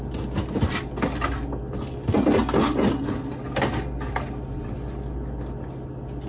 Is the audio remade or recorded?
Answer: recorded